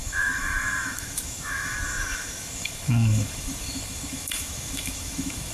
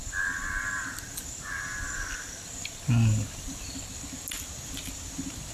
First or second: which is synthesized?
first